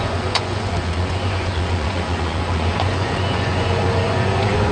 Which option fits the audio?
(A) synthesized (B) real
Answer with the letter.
A